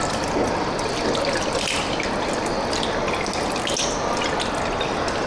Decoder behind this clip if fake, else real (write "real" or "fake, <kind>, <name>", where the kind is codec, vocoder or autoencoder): real